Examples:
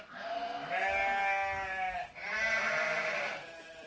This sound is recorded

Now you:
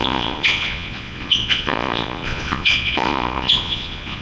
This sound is remade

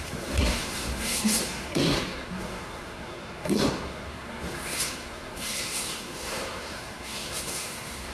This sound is remade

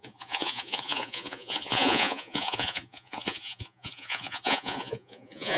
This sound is remade